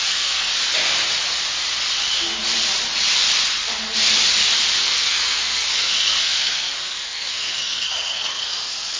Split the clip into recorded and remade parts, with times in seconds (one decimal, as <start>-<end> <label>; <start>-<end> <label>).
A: 0.0-0.5 remade; 0.5-4.8 recorded; 4.8-9.0 remade